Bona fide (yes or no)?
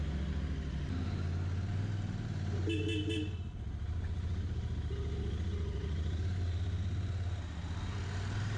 yes